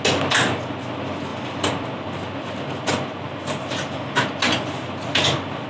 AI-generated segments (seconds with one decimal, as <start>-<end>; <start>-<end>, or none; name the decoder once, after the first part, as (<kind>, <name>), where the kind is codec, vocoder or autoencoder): none